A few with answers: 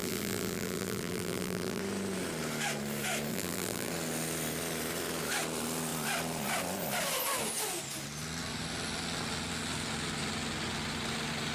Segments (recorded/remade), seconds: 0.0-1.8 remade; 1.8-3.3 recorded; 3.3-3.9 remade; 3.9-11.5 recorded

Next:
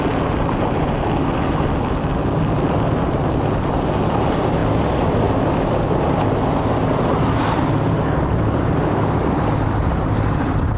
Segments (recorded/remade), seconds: 0.0-10.8 recorded

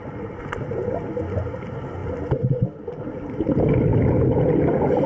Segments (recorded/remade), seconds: 0.0-5.1 recorded

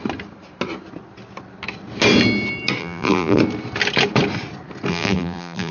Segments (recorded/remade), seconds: 0.0-2.8 recorded; 2.8-3.4 remade; 3.4-4.9 recorded; 4.9-5.7 remade

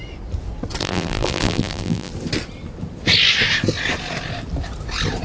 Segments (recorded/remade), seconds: 0.0-0.8 recorded; 0.8-2.1 remade; 2.1-5.2 recorded

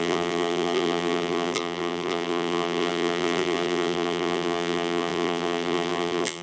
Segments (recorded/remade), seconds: 0.0-6.4 remade